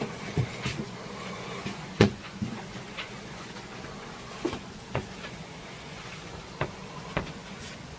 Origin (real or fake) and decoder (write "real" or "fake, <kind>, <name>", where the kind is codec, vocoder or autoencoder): fake, vocoder, Vocos